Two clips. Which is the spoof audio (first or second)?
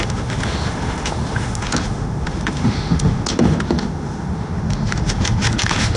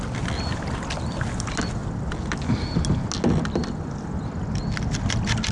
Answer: first